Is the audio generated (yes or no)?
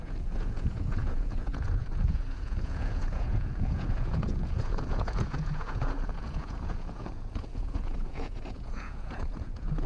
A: yes